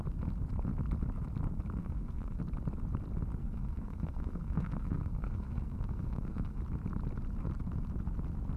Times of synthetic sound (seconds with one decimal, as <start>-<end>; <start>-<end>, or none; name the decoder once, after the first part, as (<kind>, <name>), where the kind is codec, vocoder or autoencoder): 1.8-2.4 (codec, SNAC); 3.4-6.6